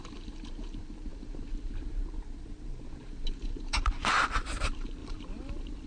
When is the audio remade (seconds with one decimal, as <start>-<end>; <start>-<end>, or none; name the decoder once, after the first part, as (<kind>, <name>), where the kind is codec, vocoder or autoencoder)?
0.0-5.0 (vocoder, BigVGAN v2)